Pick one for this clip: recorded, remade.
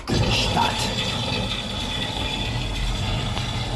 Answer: recorded